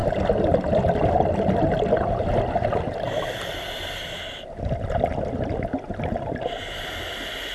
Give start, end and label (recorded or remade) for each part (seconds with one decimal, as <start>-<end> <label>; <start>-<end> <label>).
0.0-3.1 remade; 3.1-7.5 recorded